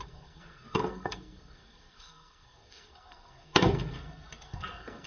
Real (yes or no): no